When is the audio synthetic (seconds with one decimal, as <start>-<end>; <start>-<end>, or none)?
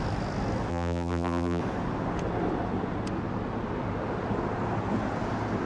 0.7-1.6